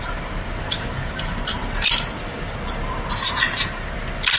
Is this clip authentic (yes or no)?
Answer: yes